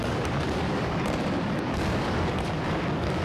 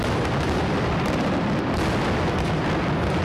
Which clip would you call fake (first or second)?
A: first